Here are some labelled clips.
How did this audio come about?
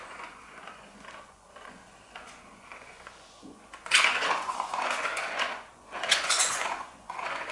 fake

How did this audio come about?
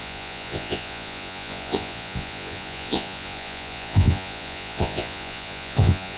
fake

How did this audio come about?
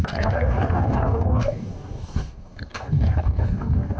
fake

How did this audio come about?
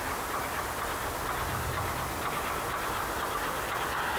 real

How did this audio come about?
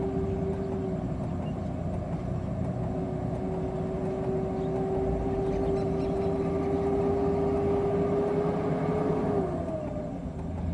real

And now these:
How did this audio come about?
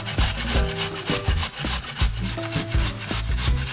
real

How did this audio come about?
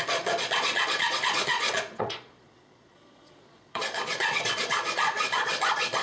fake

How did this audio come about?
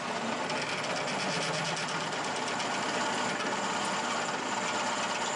real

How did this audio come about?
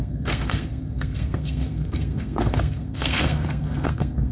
fake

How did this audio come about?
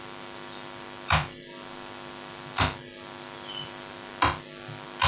real